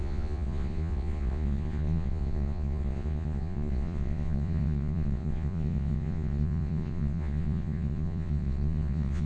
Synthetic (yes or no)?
yes